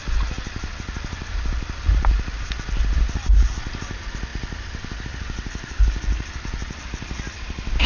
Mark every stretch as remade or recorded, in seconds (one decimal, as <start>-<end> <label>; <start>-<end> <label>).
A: 0.0-7.9 recorded

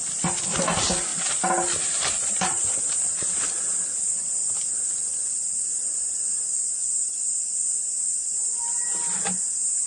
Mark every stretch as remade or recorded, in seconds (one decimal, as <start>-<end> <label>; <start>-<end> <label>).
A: 0.0-9.9 recorded

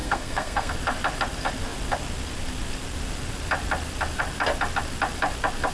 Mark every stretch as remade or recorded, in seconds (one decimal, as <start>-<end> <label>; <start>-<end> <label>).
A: 0.0-0.8 remade; 0.8-5.7 recorded

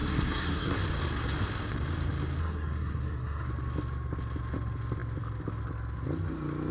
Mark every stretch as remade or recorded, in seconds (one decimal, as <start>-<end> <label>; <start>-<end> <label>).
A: 0.0-0.8 remade; 0.8-2.4 recorded; 2.4-3.5 remade; 3.5-6.7 recorded